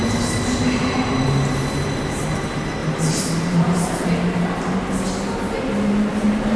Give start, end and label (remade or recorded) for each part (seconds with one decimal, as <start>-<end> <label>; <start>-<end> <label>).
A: 0.0-2.8 recorded; 2.8-4.1 remade; 4.1-6.6 recorded